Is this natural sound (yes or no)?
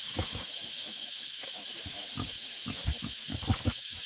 no